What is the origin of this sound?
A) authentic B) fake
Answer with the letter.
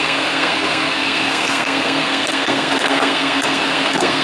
B